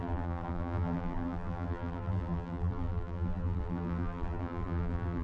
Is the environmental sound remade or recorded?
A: remade